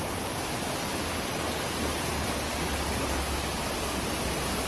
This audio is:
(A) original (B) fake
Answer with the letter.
A